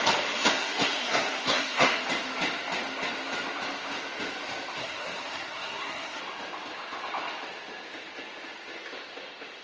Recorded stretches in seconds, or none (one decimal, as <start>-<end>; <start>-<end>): 0.0-0.4; 2.0-4.8; 6.2-9.6